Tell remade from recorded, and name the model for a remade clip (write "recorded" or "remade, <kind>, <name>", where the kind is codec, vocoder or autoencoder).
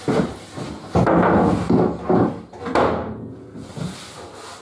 recorded